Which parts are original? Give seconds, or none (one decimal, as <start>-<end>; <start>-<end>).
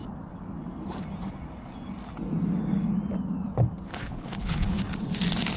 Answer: 0.0-3.9; 4.8-5.6